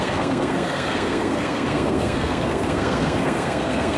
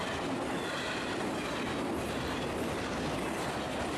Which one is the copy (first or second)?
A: first